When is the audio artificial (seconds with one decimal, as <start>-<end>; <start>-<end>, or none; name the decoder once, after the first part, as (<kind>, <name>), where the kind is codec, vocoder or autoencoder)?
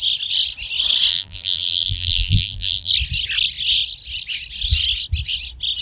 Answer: 1.1-2.9 (vocoder, BigVGAN v2)